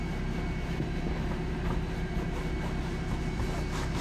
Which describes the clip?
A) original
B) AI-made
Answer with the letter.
A